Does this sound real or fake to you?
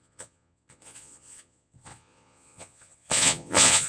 fake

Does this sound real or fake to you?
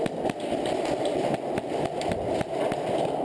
real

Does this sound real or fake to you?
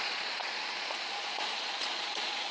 fake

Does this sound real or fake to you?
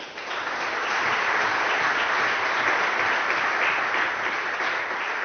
real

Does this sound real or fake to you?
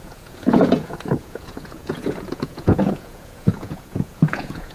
fake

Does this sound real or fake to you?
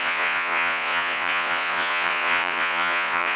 fake